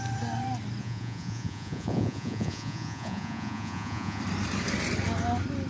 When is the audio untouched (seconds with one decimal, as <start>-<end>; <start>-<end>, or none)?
0.0-0.8; 4.2-5.7